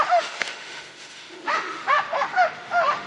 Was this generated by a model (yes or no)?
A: yes